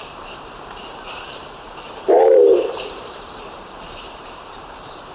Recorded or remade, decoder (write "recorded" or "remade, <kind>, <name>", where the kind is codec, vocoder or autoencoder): remade, vocoder, BigVGAN v2